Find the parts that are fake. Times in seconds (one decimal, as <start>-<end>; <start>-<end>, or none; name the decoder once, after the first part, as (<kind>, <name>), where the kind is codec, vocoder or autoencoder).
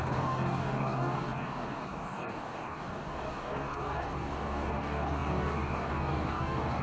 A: 0.0-6.8 (codec, DAC)